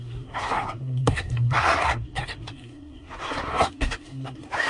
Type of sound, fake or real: fake